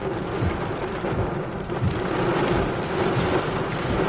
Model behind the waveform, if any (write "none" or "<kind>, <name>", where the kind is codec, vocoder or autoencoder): none